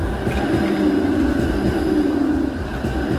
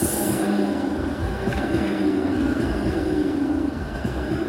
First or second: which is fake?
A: second